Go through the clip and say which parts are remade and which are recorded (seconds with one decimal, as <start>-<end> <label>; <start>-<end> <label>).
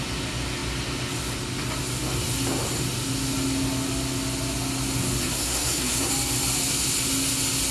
0.0-5.2 recorded; 5.2-6.1 remade; 6.1-7.7 recorded